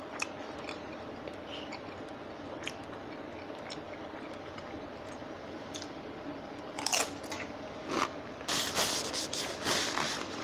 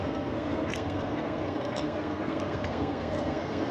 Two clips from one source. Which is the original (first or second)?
first